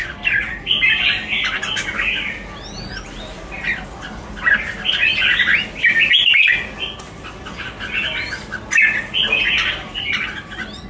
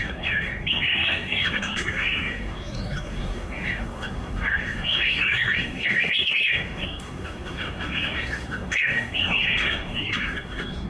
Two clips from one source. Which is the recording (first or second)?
first